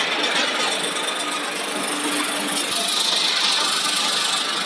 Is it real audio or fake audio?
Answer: real